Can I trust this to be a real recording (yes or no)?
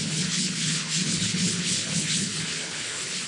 no